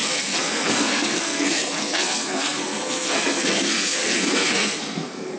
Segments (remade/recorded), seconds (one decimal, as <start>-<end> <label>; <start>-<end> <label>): 0.0-5.4 remade